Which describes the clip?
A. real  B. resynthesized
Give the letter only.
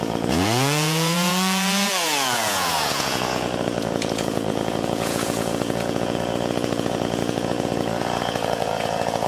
B